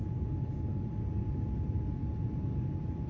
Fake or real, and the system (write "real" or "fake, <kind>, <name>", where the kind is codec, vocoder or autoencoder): real